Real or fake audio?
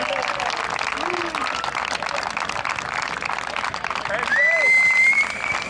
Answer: real